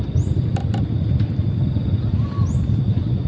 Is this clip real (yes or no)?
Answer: yes